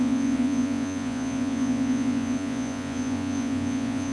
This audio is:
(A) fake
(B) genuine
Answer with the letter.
A